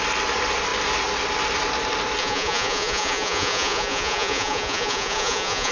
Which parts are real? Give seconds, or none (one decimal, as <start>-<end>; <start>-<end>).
0.0-2.2